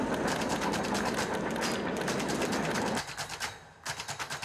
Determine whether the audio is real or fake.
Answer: real